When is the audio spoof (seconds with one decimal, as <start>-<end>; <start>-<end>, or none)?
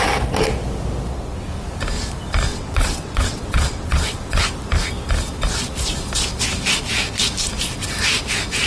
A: 2.5-4.4